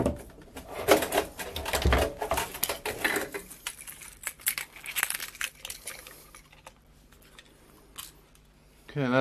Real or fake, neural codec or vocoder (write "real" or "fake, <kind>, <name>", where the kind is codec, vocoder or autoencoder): real